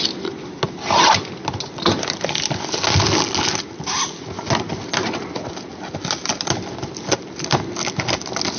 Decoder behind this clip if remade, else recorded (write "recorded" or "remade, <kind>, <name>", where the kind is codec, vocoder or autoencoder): recorded